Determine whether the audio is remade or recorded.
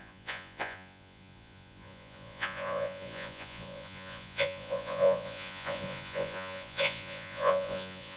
remade